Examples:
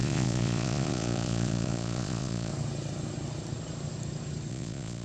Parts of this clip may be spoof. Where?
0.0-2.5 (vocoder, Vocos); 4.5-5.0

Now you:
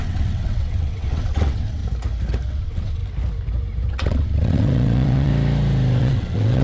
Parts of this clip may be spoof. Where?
0.0-1.8 (vocoder, WaveNeXt); 2.5-3.0; 3.9-5.3; 6.0-6.6

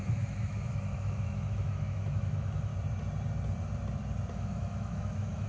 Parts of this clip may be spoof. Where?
0.0-2.7 (autoencoder, DAC-VAE); 4.3-5.5

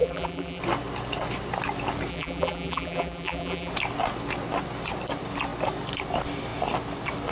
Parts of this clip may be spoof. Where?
0.0-0.6 (vocoder, BigVGAN v2); 2.1-3.7

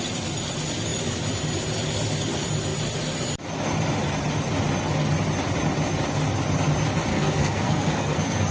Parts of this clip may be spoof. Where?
7.1-8.5 (codec, SNAC)

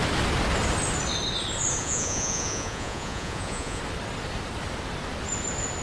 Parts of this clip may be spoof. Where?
1.8-3.8 (vocoder, Vocos)

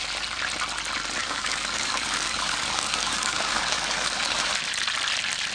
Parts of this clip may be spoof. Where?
1.2-4.5 (codec, DAC)

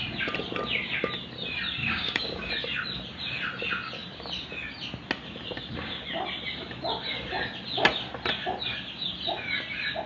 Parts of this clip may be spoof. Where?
1.8-2.5 (codec, DAC)